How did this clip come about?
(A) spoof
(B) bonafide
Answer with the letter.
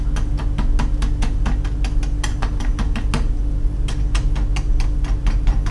B